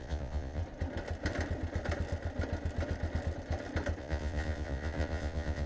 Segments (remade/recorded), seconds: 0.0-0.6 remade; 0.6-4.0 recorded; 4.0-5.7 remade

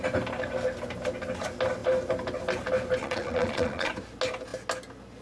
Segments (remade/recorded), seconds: 0.0-3.0 recorded; 3.0-3.9 remade; 3.9-5.2 recorded

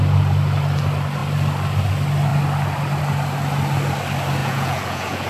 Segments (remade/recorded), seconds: 0.0-4.4 recorded; 4.4-5.3 remade

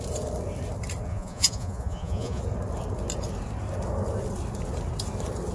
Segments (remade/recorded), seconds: 0.0-1.1 recorded; 1.1-2.4 remade; 2.4-5.5 recorded

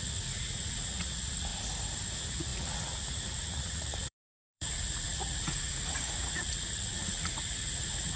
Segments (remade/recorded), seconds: 0.0-1.5 remade; 1.5-2.1 recorded; 2.1-8.2 remade